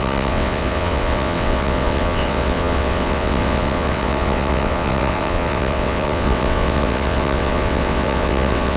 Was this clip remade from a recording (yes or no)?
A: yes